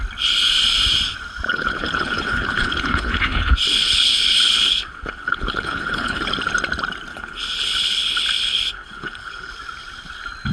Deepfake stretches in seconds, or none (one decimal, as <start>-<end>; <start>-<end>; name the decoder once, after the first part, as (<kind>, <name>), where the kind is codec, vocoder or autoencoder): 1.5-6.2 (codec, HILCodec); 7.1-9.5